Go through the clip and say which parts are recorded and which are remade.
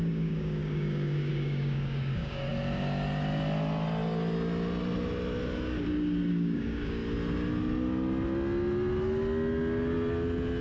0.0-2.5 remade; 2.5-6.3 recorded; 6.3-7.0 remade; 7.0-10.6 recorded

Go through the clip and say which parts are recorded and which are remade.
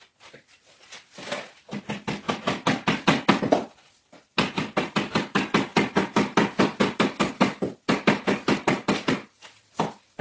0.0-10.2 recorded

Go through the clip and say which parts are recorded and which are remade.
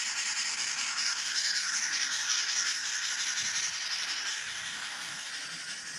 0.0-0.5 recorded; 0.5-3.1 remade; 3.1-4.3 recorded; 4.3-5.3 remade; 5.3-6.0 recorded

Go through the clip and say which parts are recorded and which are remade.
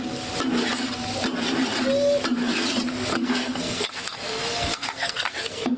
0.0-3.1 recorded; 3.1-5.8 remade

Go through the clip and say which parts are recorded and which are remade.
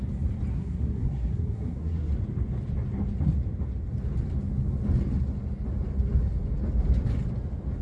0.0-0.5 recorded; 0.5-2.1 remade; 2.1-7.8 recorded